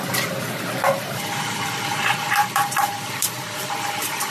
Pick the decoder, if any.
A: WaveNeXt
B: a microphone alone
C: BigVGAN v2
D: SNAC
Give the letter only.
C